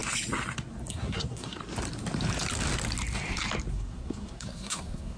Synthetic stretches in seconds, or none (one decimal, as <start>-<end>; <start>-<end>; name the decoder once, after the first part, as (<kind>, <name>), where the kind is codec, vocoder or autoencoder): 0.9-1.6 (codec, SNAC); 3.7-5.2